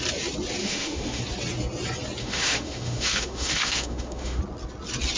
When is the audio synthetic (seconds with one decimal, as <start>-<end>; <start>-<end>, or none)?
0.6-1.2; 2.2-4.4